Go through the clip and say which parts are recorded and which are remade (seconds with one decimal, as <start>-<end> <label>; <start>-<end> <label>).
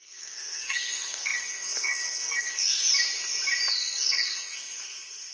0.0-2.8 remade; 2.8-3.7 recorded; 3.7-5.3 remade